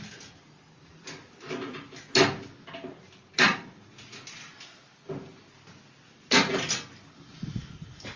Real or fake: real